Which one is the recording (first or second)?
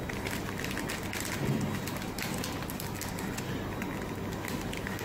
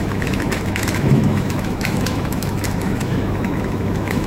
first